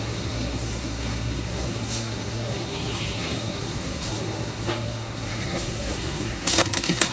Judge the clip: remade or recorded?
remade